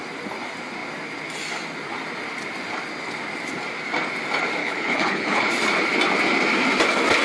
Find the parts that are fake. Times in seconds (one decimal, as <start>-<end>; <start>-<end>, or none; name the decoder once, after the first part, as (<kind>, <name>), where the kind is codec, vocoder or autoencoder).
4.6-5.5 (codec, HILCodec)